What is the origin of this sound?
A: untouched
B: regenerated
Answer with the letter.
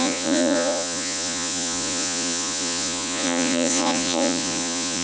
B